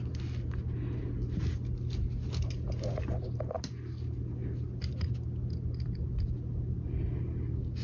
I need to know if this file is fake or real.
real